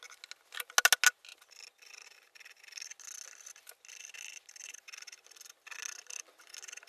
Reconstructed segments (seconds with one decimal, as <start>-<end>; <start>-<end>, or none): none

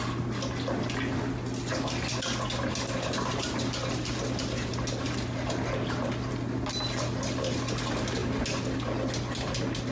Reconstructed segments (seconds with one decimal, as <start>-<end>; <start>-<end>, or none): none

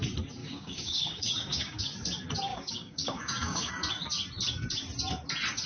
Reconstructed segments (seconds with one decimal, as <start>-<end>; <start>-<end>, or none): 0.4-1.8; 2.5-3.7

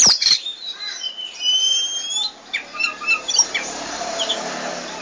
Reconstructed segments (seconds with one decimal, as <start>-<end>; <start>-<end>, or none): 0.0-1.1; 1.6-4.3